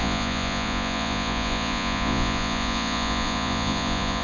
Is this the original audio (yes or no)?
no